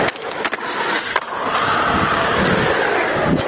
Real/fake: real